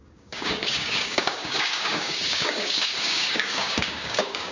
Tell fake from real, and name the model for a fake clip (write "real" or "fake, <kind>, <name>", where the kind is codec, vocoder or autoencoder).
fake, codec, DAC